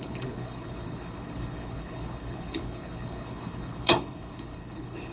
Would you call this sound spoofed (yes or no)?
yes